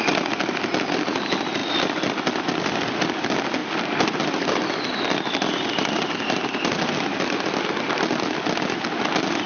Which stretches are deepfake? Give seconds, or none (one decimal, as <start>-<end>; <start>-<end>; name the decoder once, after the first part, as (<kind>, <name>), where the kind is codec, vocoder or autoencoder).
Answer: none